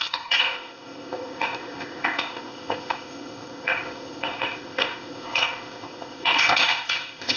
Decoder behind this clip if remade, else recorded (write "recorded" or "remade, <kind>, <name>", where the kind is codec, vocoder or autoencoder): remade, codec, ZipCodec